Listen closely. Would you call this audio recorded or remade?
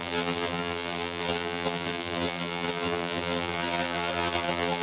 remade